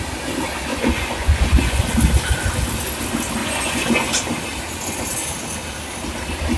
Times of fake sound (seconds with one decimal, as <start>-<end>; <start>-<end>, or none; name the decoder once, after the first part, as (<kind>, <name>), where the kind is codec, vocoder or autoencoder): 0.7-1.8 (vocoder, Vocos); 3.4-4.1